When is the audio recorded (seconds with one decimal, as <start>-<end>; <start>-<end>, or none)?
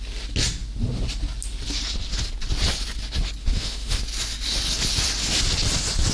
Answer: 0.0-3.4; 4.0-6.1